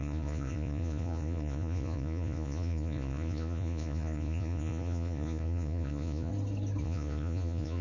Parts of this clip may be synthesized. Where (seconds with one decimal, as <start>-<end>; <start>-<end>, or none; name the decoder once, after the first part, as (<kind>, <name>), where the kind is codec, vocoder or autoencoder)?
0.0-6.3 (vocoder, Vocos); 6.8-7.8